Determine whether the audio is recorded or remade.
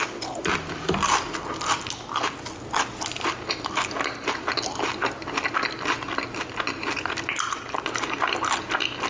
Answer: recorded